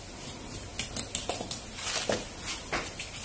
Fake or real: real